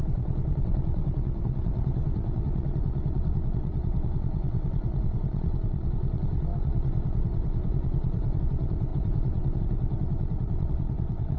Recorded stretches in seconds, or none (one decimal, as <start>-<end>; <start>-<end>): none